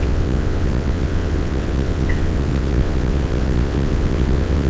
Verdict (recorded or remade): remade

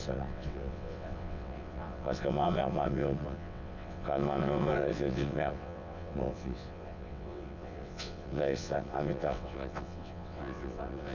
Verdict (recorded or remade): remade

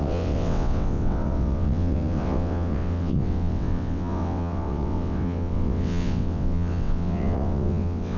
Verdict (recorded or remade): remade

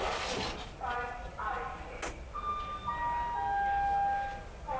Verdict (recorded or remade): recorded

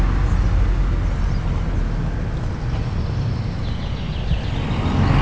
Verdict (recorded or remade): recorded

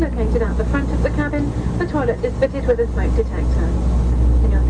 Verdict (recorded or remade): recorded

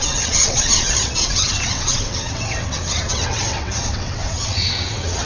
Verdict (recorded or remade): remade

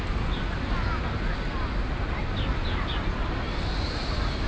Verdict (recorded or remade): recorded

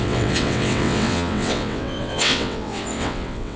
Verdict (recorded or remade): remade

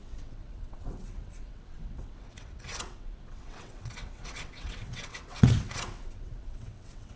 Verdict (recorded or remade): remade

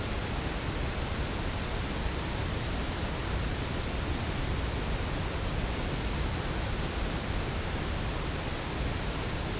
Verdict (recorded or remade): recorded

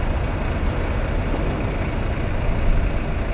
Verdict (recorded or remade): recorded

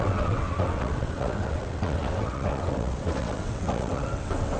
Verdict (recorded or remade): remade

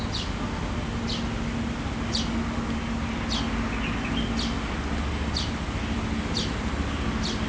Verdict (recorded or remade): recorded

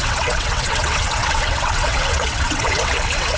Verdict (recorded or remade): remade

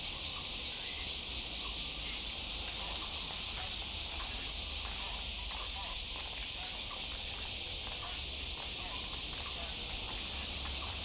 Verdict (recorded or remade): recorded